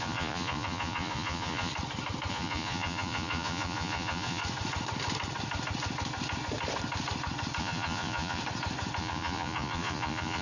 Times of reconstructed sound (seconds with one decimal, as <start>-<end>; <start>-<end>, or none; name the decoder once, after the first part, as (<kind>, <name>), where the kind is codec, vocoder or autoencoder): 0.0-1.7 (vocoder, Vocos); 2.3-4.4; 7.6-8.4; 9.0-10.4